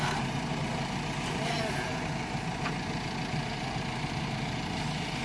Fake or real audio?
fake